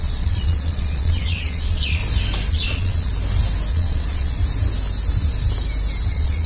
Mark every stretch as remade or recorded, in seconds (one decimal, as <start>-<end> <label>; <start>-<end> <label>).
0.0-2.0 remade; 2.0-2.5 recorded; 2.5-3.1 remade; 3.1-3.7 recorded; 3.7-4.4 remade; 4.4-6.1 recorded; 6.1-6.5 remade